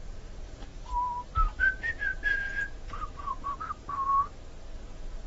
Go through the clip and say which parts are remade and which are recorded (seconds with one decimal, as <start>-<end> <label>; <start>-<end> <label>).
0.0-0.7 remade; 0.7-1.6 recorded; 1.6-3.5 remade; 3.5-4.7 recorded; 4.7-5.3 remade